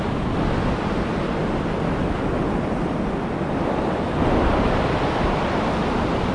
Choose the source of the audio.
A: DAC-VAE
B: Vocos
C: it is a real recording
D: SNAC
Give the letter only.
C